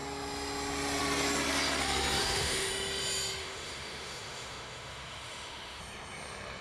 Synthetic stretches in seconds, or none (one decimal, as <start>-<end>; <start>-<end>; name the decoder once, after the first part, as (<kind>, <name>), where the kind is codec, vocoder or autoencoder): 2.2-2.7 (autoencoder, DAC-VAE); 3.4-5.8